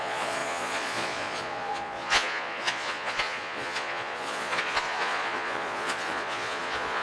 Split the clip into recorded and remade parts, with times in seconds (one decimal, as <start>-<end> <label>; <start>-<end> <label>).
0.0-7.0 remade